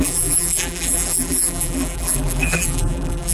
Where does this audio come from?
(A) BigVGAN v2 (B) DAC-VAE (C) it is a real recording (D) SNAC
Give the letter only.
A